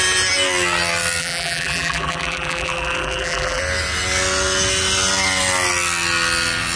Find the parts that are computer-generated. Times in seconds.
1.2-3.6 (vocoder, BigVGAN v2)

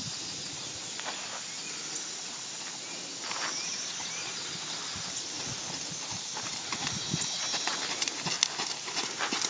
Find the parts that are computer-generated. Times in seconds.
none

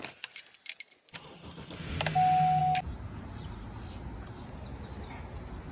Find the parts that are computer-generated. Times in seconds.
none

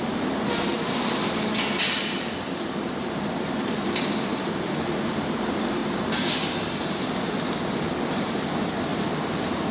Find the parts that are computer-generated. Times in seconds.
0.0-0.7 (vocoder, BigVGAN v2); 2.0-5.8; 8.3-8.9

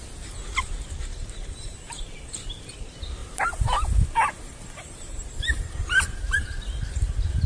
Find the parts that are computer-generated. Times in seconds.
1.2-2.4 (vocoder, BigVGAN v2); 3.2-6.6

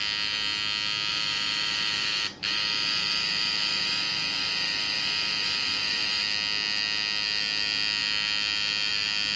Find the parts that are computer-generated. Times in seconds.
1.1-6.2 (vocoder, BigVGAN v2)